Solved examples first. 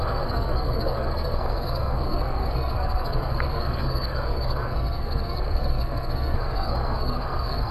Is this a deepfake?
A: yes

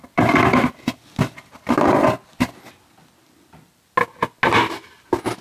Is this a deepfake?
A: no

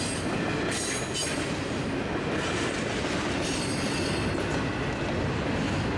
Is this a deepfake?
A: no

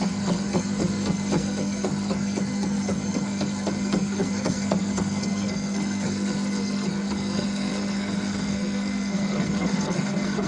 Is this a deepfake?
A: yes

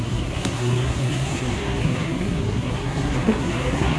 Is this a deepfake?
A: yes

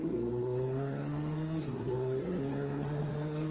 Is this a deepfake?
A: yes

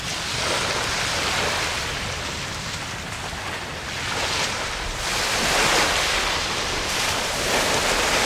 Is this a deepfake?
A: no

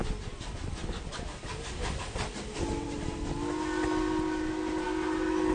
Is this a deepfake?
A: no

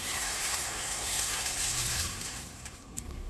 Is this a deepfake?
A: yes